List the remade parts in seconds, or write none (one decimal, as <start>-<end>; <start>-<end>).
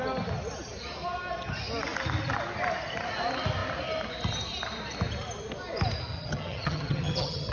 6.1-7.5